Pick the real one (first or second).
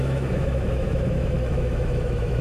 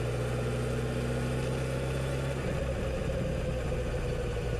second